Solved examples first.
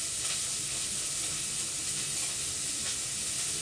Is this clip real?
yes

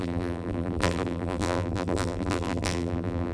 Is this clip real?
no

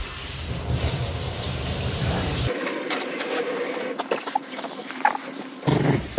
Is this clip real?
no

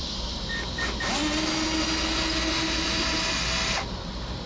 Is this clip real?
yes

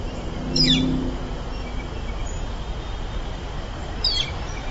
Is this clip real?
yes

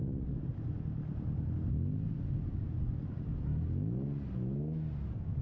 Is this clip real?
yes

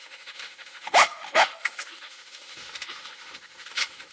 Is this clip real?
no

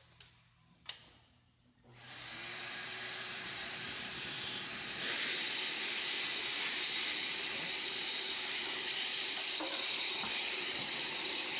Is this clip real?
no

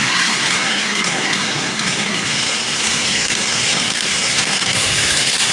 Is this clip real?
no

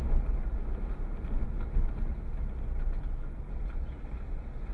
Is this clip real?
yes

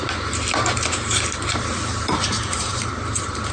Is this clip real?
no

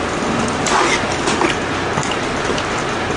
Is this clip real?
yes